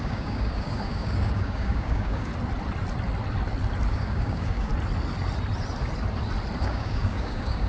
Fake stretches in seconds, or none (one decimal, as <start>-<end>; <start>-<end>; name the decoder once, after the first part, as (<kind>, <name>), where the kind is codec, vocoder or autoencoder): 0.0-2.3 (codec, DAC); 3.9-4.7; 6.6-7.7